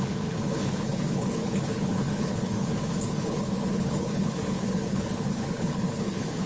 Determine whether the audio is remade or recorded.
remade